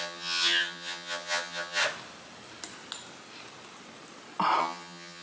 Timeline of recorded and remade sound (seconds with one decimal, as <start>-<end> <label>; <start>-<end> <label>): 0.0-1.8 remade; 1.8-4.6 recorded; 4.6-5.2 remade